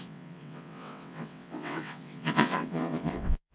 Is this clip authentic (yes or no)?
no